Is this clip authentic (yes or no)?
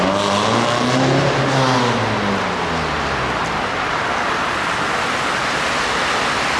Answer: yes